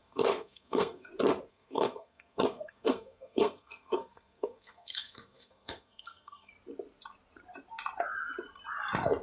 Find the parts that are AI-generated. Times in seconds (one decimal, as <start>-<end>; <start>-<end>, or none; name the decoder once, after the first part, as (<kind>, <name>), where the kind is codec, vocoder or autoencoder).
0.0-1.1 (codec, SNAC); 1.5-6.5